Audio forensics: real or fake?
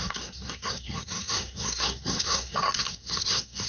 fake